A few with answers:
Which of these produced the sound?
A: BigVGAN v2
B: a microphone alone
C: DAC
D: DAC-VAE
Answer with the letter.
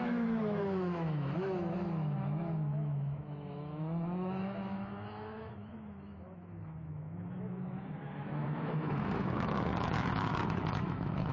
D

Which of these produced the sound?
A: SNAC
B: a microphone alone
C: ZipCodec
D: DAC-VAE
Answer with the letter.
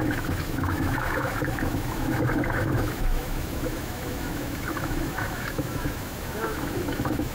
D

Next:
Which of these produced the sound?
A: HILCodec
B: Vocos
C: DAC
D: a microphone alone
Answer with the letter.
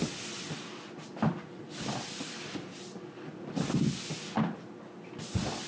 D